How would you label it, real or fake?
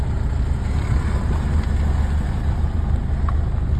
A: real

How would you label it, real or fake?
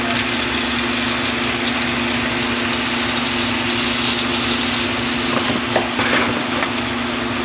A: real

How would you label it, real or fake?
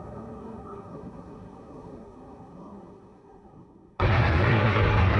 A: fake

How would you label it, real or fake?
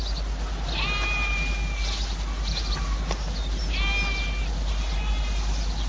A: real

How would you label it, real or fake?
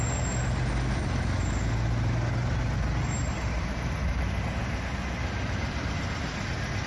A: real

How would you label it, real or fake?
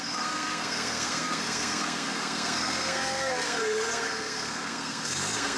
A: fake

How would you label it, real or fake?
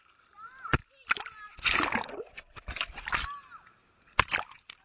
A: real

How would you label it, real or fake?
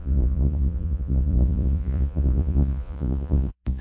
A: fake